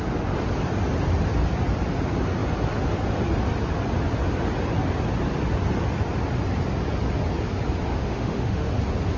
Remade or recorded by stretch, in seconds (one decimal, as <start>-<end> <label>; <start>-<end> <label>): 0.0-7.9 recorded; 7.9-8.7 remade; 8.7-9.2 recorded